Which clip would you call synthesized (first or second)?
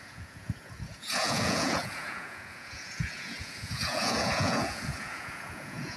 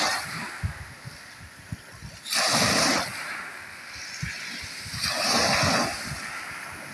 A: first